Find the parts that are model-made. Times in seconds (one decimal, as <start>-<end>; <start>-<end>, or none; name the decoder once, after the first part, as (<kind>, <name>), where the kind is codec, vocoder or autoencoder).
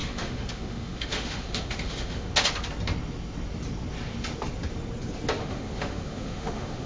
0.0-2.3 (autoencoder, DAC-VAE); 5.4-6.9